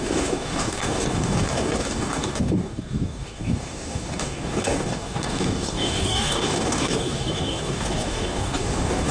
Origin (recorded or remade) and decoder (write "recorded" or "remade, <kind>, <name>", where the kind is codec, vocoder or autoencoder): remade, codec, DAC